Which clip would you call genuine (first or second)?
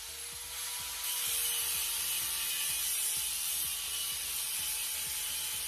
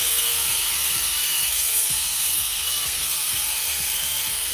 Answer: first